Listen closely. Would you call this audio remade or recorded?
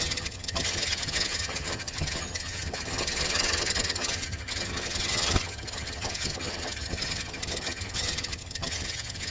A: remade